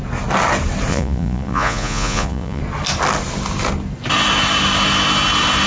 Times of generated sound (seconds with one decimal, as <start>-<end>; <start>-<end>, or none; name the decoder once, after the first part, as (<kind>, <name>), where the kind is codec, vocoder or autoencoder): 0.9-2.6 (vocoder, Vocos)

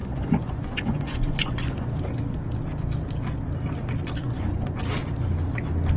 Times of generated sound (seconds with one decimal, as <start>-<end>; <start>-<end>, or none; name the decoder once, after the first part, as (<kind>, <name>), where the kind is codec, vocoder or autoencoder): 0.0-1.9 (vocoder, Vocos); 4.2-4.8

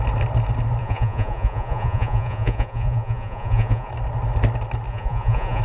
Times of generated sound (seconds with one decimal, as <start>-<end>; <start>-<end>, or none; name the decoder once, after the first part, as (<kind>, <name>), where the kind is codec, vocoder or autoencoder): 0.8-3.9 (vocoder, Vocos); 4.9-5.6

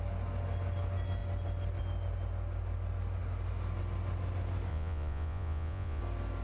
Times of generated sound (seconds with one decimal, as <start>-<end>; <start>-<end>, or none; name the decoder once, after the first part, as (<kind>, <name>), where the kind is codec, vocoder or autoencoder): 4.7-6.0 (vocoder, Vocos)

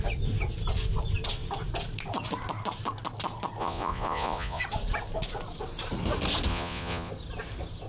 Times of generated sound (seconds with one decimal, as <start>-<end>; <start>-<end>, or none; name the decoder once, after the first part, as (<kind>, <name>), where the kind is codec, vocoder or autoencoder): 3.6-4.6 (vocoder, Vocos); 6.5-7.1

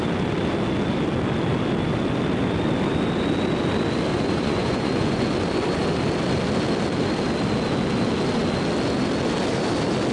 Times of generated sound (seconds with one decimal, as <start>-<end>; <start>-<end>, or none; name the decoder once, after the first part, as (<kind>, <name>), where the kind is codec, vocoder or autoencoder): 4.1-5.3 (vocoder, Vocos)